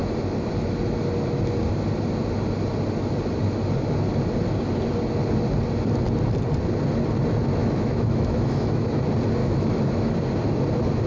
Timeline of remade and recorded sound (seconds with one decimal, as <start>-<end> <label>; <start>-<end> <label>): 0.0-7.6 recorded; 7.6-9.0 remade; 9.0-9.4 recorded; 9.4-10.1 remade; 10.1-11.1 recorded